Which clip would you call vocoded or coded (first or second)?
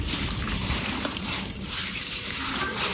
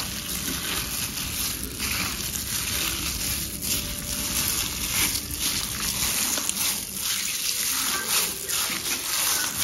first